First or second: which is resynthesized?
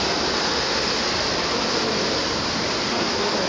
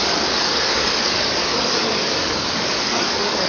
second